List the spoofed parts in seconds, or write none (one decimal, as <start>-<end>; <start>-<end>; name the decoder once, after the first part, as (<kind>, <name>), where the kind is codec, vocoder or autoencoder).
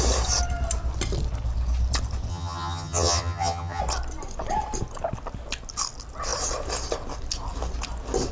2.3-3.8 (vocoder, HiFi-GAN)